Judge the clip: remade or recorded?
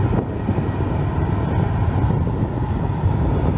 recorded